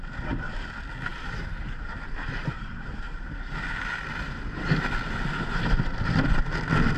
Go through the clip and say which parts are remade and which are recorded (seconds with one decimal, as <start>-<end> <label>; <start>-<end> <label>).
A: 0.0-1.1 recorded; 1.1-2.9 remade; 2.9-7.0 recorded